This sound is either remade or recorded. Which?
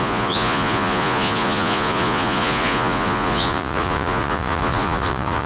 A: remade